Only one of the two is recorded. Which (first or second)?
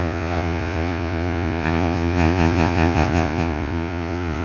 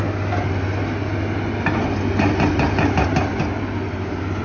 second